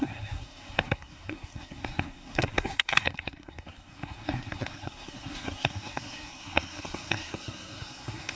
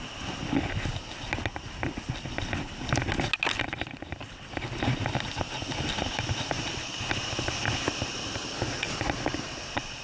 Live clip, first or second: second